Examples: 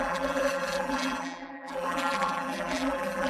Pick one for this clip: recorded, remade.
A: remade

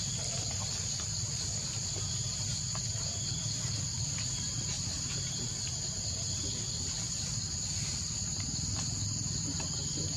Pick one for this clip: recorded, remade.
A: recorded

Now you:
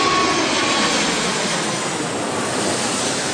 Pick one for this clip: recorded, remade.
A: recorded